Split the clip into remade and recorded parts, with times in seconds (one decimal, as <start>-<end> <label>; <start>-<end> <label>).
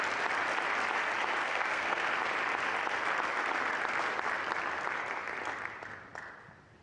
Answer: 0.0-1.4 recorded; 1.4-2.1 remade; 2.1-6.8 recorded